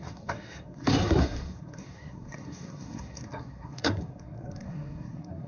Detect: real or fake fake